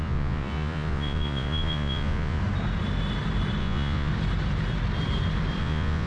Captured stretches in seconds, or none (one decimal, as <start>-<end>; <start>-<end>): 2.4-3.6; 4.1-5.6